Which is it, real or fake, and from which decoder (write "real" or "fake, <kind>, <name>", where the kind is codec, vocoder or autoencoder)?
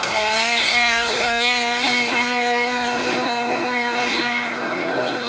fake, codec, SNAC